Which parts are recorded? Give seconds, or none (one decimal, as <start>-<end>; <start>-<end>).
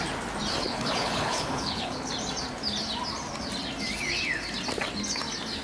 0.0-0.6; 2.1-5.6